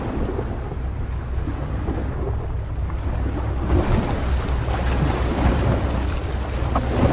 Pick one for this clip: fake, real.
real